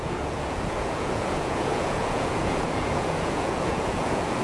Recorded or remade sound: remade